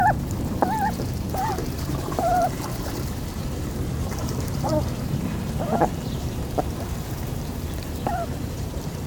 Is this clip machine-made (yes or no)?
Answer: yes